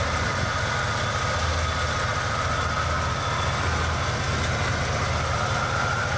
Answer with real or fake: real